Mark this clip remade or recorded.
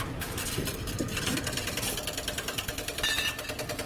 recorded